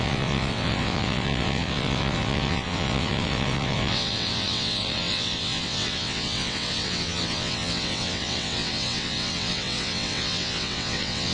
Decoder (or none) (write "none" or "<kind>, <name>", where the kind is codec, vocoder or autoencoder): vocoder, WaveNeXt